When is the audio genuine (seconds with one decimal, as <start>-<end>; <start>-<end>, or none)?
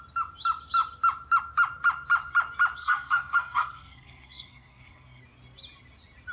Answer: 0.0-2.8; 5.2-6.3